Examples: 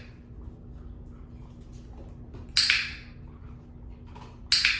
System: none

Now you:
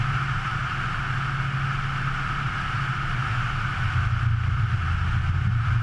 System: none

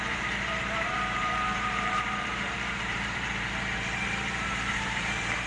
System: vocoder, BigVGAN v2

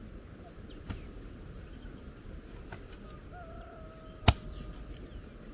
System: none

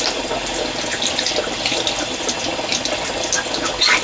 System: none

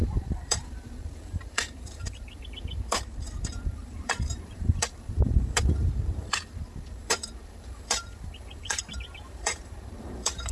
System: vocoder, BigVGAN v2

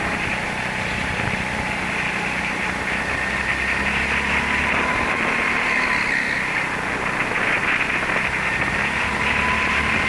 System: none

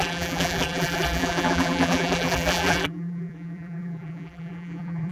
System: vocoder, BigVGAN v2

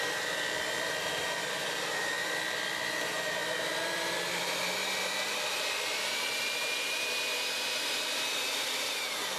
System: vocoder, BigVGAN v2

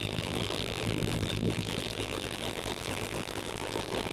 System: vocoder, BigVGAN v2